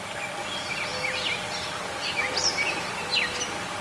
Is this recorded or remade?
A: recorded